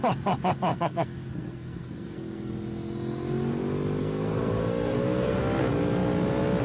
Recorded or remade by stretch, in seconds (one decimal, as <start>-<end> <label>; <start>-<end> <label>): 0.0-0.7 recorded; 0.7-2.5 remade; 2.5-4.0 recorded; 4.0-5.4 remade; 5.4-6.6 recorded